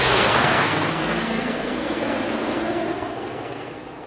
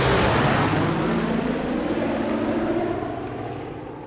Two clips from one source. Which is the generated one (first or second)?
first